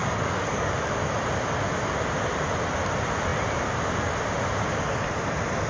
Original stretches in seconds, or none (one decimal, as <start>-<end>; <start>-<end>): 1.1-5.7